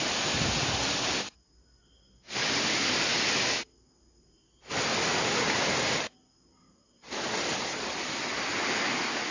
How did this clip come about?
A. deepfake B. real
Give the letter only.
B